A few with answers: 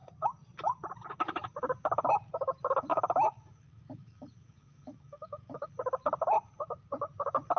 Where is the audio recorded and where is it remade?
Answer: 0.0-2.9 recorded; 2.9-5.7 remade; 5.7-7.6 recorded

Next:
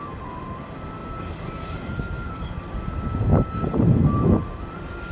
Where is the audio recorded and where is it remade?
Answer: 0.0-5.1 recorded

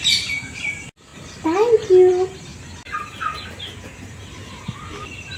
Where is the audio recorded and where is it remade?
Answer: 0.0-5.4 recorded